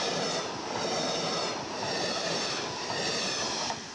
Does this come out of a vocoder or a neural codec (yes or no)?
no